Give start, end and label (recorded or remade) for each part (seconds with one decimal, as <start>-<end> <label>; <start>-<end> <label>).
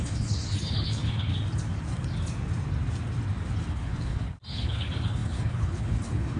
0.0-1.3 remade; 1.3-3.7 recorded; 3.7-6.4 remade